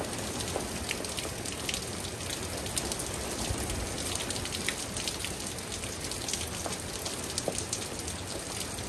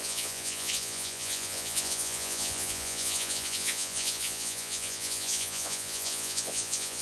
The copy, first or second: second